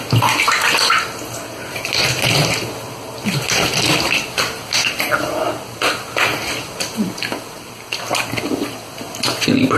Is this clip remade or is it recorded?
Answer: recorded